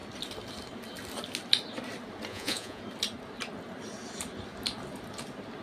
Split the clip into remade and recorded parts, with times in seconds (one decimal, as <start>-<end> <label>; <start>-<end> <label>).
0.0-2.3 recorded; 2.3-2.8 remade; 2.8-5.6 recorded